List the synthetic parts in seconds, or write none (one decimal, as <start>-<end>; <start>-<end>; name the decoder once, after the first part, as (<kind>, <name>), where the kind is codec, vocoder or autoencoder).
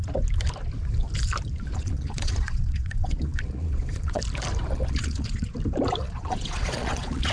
1.7-4.2 (vocoder, Vocos); 4.7-5.5; 6.0-7.3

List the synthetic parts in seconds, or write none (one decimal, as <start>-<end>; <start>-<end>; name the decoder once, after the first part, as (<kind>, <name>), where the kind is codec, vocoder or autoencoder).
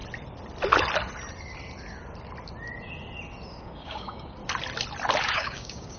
3.6-4.4 (codec, DAC); 5.2-6.0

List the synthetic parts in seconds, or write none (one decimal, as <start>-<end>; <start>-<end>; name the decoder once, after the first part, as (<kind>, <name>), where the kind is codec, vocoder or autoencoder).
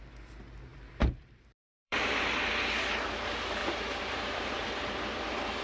0.7-2.2 (vocoder, BigVGAN v2); 3.6-5.0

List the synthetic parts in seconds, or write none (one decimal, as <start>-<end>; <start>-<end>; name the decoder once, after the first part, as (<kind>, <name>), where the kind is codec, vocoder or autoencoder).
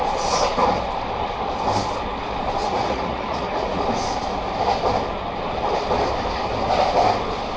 2.6-3.8 (vocoder, Vocos)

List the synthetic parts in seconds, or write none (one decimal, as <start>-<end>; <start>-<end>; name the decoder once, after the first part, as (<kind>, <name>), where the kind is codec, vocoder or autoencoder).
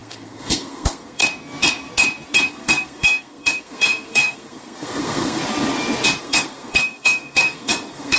0.0-1.2 (codec, SNAC); 2.5-5.4; 6.2-8.2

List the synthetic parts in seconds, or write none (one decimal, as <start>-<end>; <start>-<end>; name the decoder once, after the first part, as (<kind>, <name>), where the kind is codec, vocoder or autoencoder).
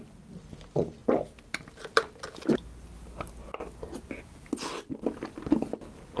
none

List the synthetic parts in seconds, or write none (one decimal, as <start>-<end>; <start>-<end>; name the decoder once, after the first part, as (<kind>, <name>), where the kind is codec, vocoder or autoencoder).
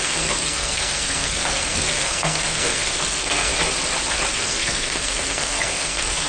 0.0-3.5 (codec, SNAC); 4.3-6.3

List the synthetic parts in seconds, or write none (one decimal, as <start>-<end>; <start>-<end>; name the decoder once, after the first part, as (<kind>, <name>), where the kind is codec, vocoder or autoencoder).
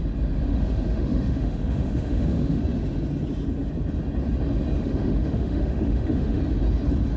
0.5-2.6 (autoencoder, DAC-VAE); 4.8-6.4